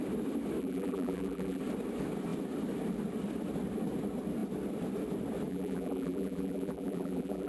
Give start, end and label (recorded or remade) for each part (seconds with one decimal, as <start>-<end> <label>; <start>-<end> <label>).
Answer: 0.0-0.6 recorded; 0.6-1.6 remade; 1.6-5.5 recorded; 5.5-7.5 remade